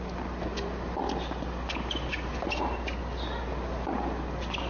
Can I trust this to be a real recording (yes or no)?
yes